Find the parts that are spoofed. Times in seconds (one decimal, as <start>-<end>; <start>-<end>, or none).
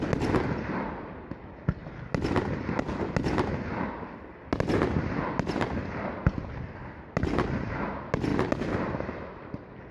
none